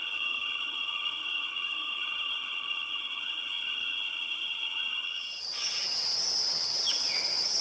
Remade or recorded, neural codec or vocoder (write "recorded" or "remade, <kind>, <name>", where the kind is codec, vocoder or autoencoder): remade, vocoder, HiFi-GAN